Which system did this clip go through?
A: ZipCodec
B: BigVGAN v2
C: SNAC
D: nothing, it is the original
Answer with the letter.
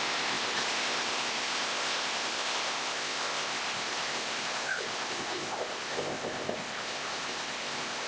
A